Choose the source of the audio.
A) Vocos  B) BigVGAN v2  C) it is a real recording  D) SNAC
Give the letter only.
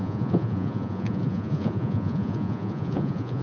A